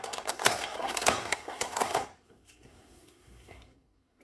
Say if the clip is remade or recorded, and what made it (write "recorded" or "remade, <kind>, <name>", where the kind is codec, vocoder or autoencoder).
remade, codec, SNAC